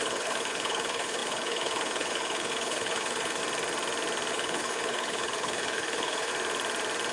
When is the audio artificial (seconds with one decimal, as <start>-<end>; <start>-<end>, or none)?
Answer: 0.0-3.4; 4.3-6.3